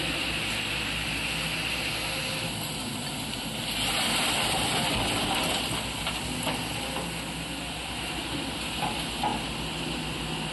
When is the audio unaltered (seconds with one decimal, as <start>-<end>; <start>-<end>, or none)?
0.0-10.5